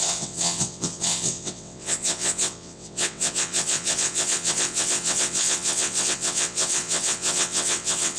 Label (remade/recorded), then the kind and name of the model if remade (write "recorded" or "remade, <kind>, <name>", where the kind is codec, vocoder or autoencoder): remade, vocoder, WaveNeXt